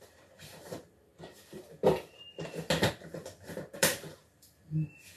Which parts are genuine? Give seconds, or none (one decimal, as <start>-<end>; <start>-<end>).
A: 1.1-2.9; 4.2-5.2